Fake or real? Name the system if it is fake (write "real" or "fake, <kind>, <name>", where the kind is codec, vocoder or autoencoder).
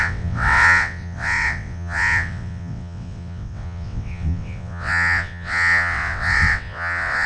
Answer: fake, vocoder, WaveNeXt